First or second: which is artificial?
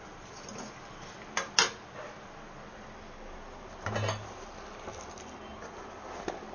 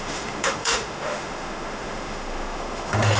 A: second